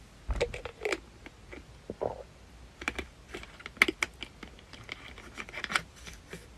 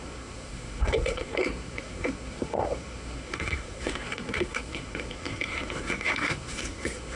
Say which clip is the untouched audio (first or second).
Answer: first